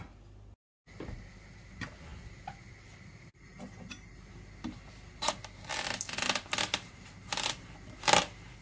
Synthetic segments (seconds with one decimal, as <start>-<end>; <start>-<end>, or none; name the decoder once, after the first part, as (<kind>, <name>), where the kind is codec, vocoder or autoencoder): none